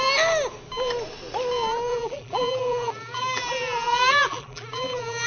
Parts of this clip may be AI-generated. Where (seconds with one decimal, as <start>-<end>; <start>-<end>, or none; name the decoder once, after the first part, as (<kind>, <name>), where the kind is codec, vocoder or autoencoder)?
1.9-5.3 (vocoder, BigVGAN v2)